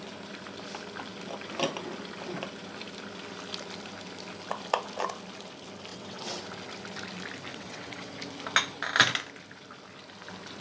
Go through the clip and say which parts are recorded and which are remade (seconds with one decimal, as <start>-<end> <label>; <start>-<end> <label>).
0.0-5.9 recorded; 5.9-6.4 remade; 6.4-7.5 recorded; 7.5-8.1 remade; 8.1-10.6 recorded